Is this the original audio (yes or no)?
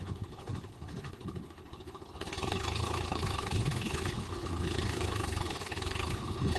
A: no